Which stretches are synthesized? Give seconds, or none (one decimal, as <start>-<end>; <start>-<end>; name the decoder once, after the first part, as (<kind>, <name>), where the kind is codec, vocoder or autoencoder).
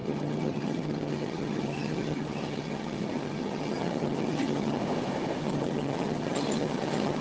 0.0-4.8 (vocoder, HiFi-GAN); 5.4-7.2